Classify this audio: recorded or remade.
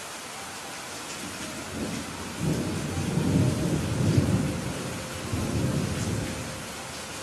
recorded